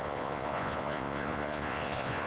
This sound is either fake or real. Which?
fake